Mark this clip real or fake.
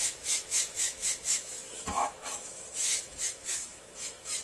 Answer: fake